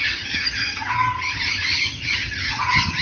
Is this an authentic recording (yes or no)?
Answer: no